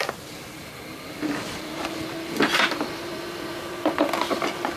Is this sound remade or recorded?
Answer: remade